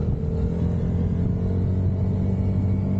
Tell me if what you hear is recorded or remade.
recorded